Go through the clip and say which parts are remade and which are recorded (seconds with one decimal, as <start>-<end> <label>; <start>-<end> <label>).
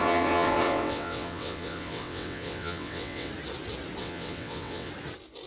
0.0-3.3 remade; 3.3-4.0 recorded; 4.0-4.9 remade; 4.9-5.5 recorded